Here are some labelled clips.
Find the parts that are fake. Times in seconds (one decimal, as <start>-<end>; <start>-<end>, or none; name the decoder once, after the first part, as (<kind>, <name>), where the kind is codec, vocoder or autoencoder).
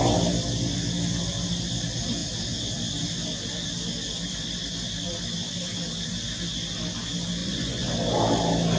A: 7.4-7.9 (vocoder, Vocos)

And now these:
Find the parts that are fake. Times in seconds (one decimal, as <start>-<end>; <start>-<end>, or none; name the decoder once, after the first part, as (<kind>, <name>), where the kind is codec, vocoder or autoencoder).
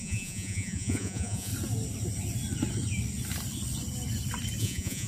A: 0.0-1.5 (vocoder, Vocos); 4.6-5.1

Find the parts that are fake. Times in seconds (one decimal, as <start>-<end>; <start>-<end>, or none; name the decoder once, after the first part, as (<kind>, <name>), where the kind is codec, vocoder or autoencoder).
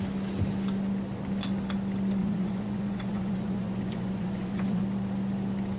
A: 2.2-4.8 (vocoder, Vocos)